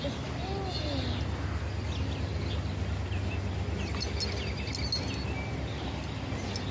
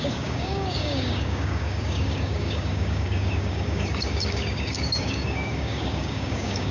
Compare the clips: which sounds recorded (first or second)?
first